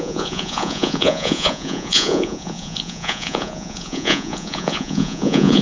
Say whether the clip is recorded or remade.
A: remade